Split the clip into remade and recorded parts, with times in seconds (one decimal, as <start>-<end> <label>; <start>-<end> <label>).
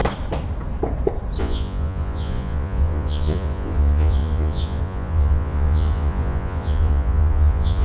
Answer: 0.0-1.4 recorded; 1.4-7.8 remade